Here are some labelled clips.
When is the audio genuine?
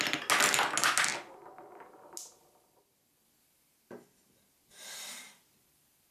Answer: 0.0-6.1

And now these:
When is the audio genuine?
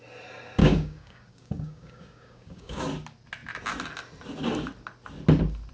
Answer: 0.0-0.6; 2.8-5.7